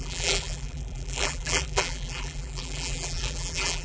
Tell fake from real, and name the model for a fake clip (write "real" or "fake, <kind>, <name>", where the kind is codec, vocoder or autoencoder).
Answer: fake, vocoder, BigVGAN v2